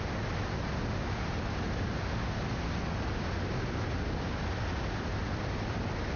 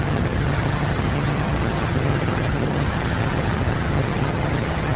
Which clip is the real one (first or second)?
first